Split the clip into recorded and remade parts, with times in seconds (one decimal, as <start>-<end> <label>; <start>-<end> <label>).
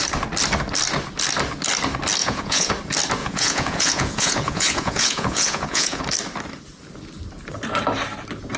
0.0-2.2 recorded; 2.2-2.7 remade; 2.7-3.2 recorded; 3.2-6.0 remade; 6.0-8.6 recorded